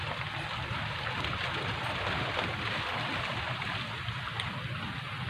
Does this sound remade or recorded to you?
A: recorded